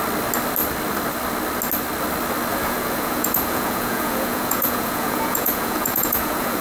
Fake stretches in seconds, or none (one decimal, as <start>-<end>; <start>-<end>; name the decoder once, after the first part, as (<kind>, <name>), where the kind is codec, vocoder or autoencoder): 2.5-6.6 (vocoder, Vocos)